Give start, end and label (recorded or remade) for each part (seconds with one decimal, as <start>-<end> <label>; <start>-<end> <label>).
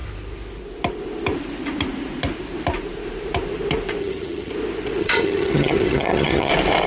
0.0-4.0 recorded; 4.0-4.5 remade; 4.5-5.0 recorded; 5.0-6.5 remade; 6.5-6.9 recorded